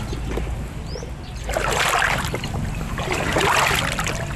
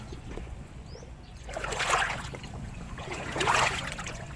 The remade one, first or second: second